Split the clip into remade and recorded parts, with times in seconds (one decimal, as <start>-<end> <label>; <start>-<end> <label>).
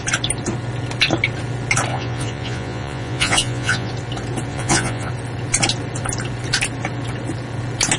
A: 0.0-1.9 recorded; 1.9-3.9 remade; 3.9-4.5 recorded; 4.5-5.1 remade; 5.1-8.0 recorded